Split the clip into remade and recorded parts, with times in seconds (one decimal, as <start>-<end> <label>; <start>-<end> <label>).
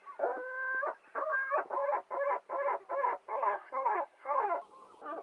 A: 0.0-3.3 recorded; 3.3-4.4 remade; 4.4-5.2 recorded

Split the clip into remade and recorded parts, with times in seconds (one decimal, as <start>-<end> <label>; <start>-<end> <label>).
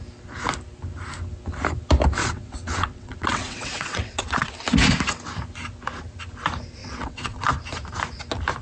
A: 0.0-2.2 recorded; 2.2-4.5 remade; 4.5-6.8 recorded; 6.8-7.5 remade; 7.5-8.6 recorded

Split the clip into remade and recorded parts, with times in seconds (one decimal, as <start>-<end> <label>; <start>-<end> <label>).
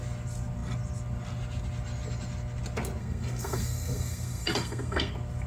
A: 0.0-3.0 recorded; 3.0-5.1 remade; 5.1-5.5 recorded